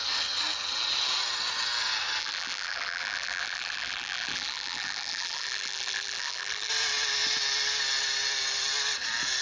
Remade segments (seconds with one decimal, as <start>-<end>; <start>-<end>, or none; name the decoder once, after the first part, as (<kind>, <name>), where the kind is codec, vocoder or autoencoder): 2.2-6.7 (vocoder, BigVGAN v2)